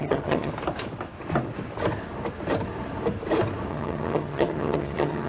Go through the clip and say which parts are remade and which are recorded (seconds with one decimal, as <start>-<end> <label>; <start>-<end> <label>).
0.0-0.5 remade; 0.5-3.7 recorded; 3.7-5.3 remade